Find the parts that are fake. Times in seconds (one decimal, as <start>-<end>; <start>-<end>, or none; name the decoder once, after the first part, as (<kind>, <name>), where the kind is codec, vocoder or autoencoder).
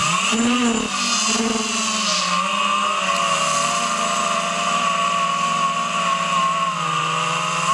none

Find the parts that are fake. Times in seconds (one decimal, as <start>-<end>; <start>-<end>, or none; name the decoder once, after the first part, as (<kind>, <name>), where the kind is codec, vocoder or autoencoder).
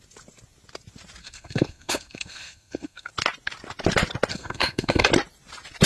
1.2-3.1 (codec, SNAC); 4.3-5.1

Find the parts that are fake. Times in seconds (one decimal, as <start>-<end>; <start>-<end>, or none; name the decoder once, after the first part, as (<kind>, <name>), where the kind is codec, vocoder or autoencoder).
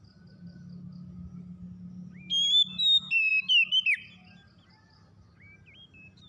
none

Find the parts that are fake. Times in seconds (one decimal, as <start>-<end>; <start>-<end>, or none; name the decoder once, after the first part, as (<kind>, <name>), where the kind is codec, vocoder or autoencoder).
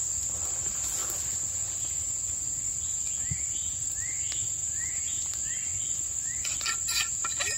4.6-5.2 (vocoder, Vocos)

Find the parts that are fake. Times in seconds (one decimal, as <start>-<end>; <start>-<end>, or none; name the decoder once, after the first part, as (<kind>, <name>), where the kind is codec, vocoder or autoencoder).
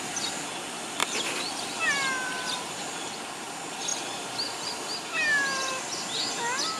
none